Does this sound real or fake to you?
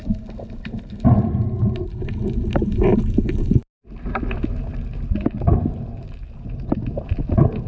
real